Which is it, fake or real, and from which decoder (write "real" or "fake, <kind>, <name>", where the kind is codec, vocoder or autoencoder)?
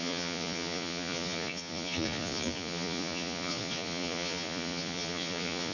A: fake, vocoder, Vocos